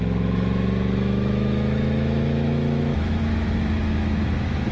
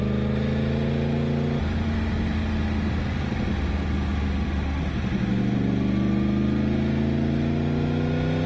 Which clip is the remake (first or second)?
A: first